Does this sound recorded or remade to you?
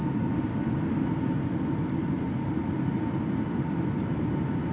recorded